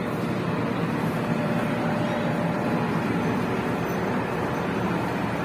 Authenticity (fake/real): real